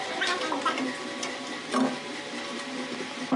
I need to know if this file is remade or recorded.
recorded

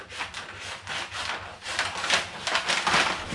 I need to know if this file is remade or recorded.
recorded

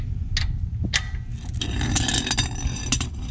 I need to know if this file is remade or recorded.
recorded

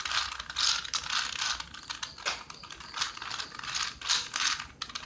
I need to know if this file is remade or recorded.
recorded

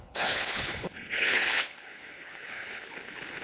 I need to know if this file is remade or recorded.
remade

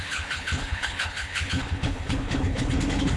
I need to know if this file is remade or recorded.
remade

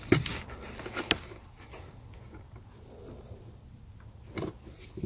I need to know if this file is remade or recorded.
recorded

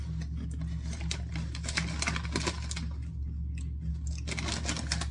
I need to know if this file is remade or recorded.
recorded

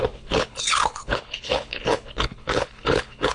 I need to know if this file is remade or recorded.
remade